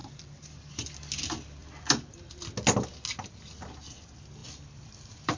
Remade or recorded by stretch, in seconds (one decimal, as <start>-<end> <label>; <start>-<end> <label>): 0.0-0.9 remade; 0.9-1.6 recorded; 1.6-2.3 remade; 2.3-4.4 recorded; 4.4-5.4 remade